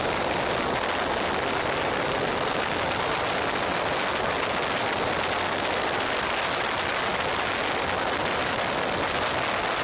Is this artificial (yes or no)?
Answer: no